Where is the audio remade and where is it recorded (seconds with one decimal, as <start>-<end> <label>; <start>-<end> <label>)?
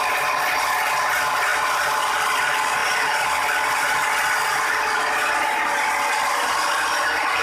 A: 0.0-7.4 recorded